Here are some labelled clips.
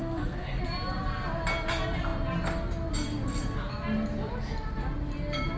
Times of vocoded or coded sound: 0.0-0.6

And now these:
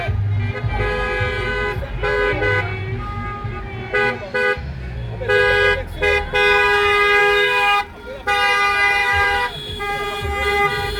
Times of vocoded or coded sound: 7.2-7.8; 9.0-9.9